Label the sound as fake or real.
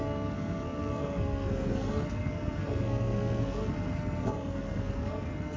fake